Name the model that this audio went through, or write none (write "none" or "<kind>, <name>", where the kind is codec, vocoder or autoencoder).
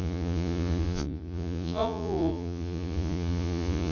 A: vocoder, Vocos